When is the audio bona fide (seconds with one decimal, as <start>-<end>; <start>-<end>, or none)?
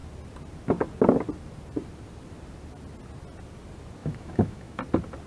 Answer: 0.0-4.0; 4.8-5.3